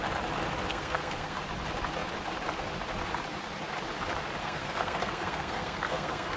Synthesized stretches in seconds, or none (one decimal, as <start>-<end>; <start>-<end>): 0.7-1.4; 4.4-6.4